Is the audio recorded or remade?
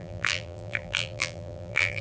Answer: remade